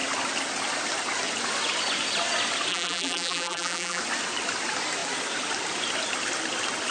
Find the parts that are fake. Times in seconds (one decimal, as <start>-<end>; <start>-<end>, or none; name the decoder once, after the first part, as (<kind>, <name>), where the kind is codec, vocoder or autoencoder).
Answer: 2.7-4.0 (vocoder, BigVGAN v2)